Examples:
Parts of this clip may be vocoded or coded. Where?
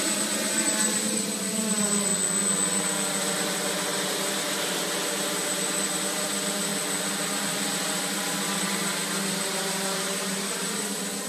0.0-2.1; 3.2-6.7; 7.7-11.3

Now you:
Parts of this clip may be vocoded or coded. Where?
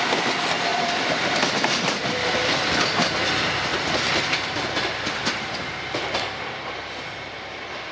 0.7-2.3; 3.7-7.9